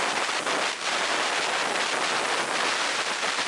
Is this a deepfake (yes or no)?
no